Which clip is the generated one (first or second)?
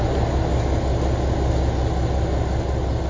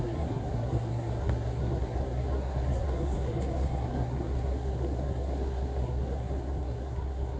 second